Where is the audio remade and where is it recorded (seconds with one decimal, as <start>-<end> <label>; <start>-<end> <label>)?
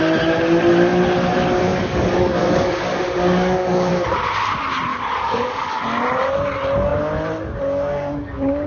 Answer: 0.0-1.7 recorded; 1.7-3.9 remade; 3.9-4.9 recorded; 4.9-5.8 remade; 5.8-7.9 recorded; 7.9-8.7 remade